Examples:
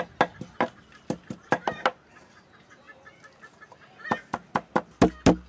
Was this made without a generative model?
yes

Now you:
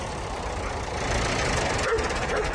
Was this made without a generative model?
yes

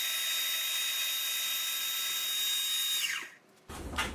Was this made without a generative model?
yes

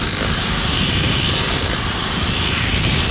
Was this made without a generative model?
yes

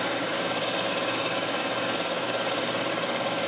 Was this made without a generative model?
no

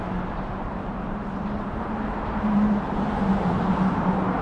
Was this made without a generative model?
no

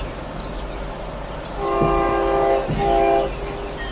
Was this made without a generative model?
yes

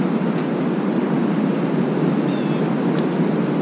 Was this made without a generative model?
yes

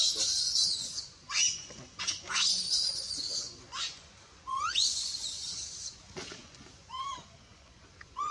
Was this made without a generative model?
no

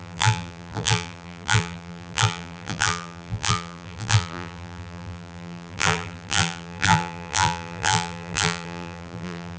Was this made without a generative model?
no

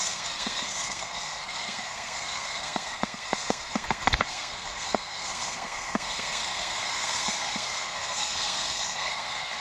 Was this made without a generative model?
no